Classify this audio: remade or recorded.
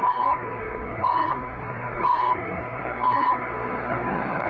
remade